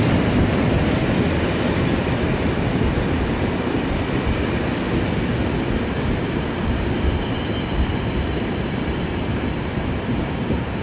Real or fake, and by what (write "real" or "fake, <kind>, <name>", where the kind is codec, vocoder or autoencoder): fake, vocoder, BigVGAN v2